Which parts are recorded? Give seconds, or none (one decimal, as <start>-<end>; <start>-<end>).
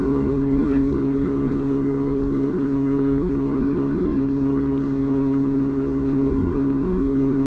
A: none